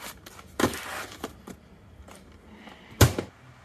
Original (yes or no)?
yes